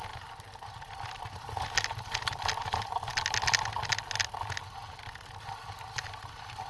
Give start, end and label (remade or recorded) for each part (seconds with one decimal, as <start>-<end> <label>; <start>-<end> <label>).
0.0-6.7 recorded